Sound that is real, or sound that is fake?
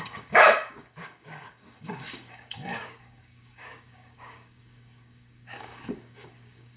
fake